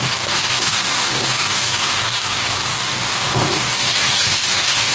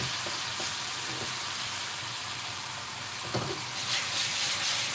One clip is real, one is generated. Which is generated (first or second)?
first